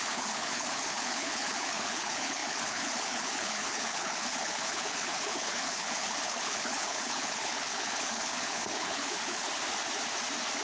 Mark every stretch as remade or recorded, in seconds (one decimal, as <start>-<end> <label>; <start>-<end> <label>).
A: 0.0-9.5 remade; 9.5-10.6 recorded